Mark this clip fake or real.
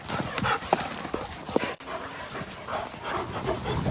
real